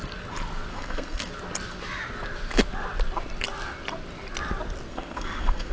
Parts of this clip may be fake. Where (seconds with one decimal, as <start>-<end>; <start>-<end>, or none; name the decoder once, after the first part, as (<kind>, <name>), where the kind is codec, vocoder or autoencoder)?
0.7-1.3 (codec, SNAC); 4.9-5.7

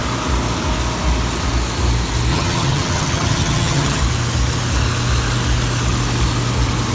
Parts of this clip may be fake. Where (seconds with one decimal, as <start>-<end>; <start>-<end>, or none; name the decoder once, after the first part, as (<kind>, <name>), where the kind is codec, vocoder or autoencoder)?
2.3-4.0 (vocoder, HiFi-GAN)

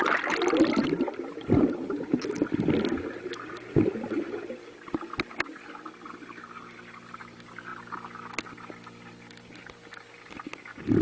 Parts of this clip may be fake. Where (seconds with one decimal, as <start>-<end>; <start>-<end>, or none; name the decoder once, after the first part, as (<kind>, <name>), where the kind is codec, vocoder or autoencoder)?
none

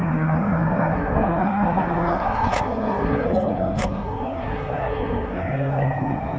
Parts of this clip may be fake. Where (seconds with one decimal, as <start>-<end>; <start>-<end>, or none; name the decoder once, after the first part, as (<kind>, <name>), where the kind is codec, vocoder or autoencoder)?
0.0-6.4 (codec, SNAC)